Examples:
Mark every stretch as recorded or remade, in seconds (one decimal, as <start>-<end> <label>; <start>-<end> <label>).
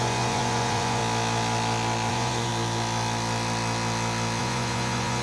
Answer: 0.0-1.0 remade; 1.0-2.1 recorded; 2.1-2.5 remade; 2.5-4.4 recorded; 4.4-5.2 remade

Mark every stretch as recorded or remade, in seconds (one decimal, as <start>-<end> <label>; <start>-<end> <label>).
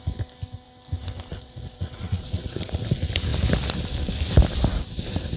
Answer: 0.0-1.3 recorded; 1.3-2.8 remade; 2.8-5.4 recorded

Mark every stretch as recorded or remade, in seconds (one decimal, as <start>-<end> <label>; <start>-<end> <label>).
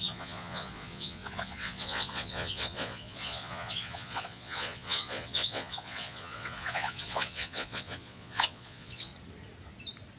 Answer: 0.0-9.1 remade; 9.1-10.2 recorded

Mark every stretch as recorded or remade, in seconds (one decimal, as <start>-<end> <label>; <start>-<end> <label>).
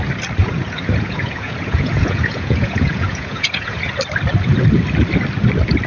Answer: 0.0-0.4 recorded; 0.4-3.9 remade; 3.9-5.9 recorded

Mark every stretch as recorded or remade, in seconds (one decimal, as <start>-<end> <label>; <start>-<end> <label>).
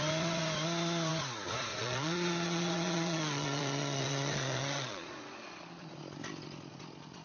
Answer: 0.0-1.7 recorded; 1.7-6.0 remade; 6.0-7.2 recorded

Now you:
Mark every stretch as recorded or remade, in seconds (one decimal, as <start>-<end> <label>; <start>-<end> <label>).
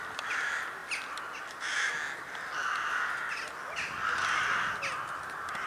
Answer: 0.0-5.7 recorded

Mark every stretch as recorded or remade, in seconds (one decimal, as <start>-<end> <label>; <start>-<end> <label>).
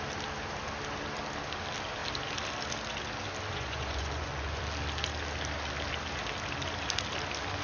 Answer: 0.0-3.5 recorded; 3.5-4.6 remade; 4.6-7.6 recorded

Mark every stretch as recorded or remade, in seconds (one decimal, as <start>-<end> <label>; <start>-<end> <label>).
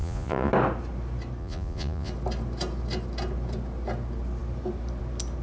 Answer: 0.0-0.5 remade; 0.5-1.4 recorded; 1.4-2.1 remade; 2.1-5.4 recorded